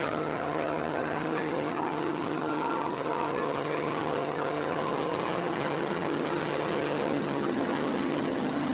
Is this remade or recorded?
remade